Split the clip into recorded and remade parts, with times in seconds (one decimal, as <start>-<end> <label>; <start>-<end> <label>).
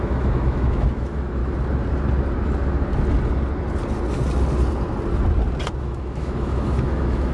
0.0-1.4 remade; 1.4-5.8 recorded; 5.8-7.3 remade